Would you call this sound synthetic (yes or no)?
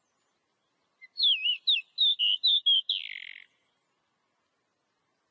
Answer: no